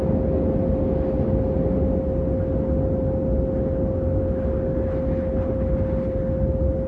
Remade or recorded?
recorded